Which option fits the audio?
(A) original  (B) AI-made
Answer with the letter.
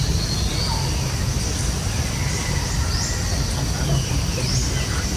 A